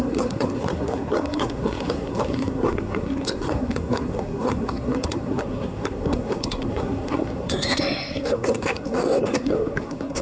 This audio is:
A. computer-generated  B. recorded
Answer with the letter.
A